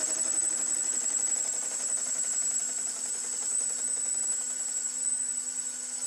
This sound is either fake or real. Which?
real